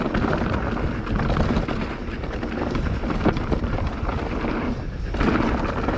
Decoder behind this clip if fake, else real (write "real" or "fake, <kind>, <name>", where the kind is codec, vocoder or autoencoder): real